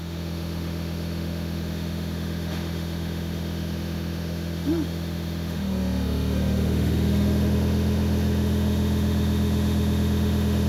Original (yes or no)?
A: no